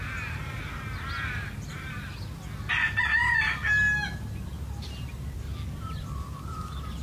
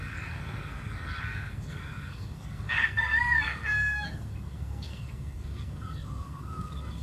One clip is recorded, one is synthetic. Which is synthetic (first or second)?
second